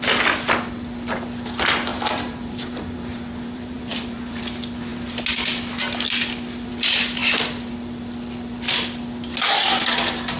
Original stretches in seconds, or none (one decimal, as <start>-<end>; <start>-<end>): 0.0-1.9; 4.4-10.4